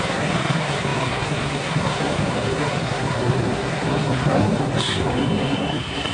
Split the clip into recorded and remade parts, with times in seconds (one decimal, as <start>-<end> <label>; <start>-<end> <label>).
0.0-6.1 remade